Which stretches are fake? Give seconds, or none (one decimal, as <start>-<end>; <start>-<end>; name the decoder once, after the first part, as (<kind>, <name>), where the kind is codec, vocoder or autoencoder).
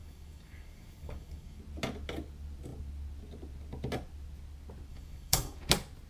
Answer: 0.0-1.6 (codec, DAC); 4.9-5.6